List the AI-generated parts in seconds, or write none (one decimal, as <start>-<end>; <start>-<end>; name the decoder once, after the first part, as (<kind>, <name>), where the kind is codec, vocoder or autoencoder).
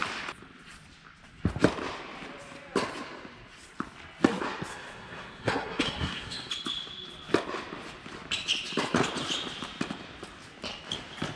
4.7-6.5 (codec, SNAC)